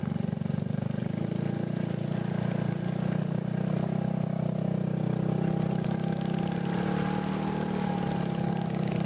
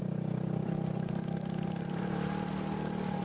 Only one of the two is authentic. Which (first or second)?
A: first